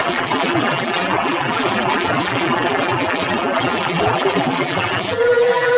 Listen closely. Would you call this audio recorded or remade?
remade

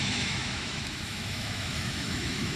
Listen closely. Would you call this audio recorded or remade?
remade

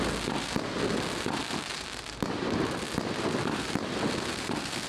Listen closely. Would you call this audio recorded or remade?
recorded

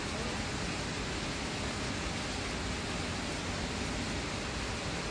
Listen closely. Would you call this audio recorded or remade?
recorded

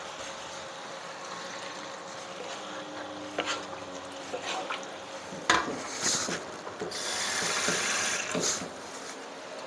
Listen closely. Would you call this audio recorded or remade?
recorded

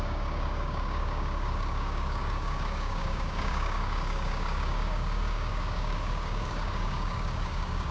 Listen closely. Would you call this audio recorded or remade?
remade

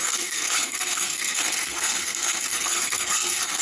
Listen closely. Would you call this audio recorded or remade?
remade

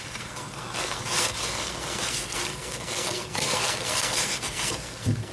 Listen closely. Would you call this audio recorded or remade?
remade